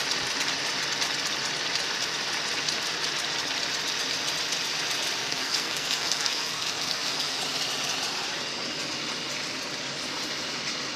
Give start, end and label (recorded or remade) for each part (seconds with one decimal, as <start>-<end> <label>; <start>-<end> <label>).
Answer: 0.0-5.2 recorded; 5.2-7.4 remade; 7.4-11.0 recorded